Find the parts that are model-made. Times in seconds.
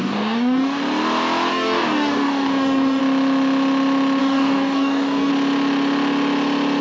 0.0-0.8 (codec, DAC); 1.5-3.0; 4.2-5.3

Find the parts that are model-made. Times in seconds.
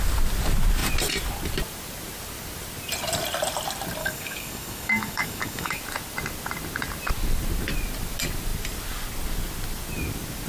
4.0-5.8 (codec, DAC)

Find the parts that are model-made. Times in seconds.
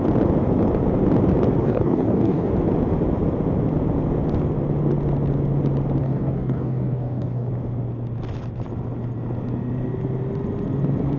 1.6-2.5 (codec, DAC); 6.0-7.5